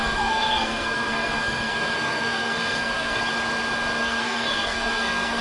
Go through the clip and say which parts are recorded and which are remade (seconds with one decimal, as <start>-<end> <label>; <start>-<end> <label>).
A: 0.0-3.2 remade; 3.2-4.0 recorded; 4.0-5.4 remade